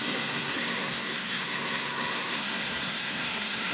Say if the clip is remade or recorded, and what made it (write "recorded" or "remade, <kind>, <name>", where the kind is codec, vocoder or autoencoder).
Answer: remade, codec, SNAC